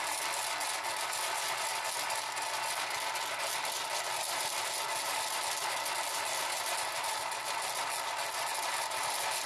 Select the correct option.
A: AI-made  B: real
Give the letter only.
B